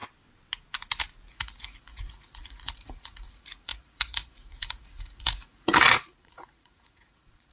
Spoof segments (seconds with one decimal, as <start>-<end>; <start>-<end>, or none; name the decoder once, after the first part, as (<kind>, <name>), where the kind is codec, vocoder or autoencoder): 1.3-7.5 (vocoder, Vocos)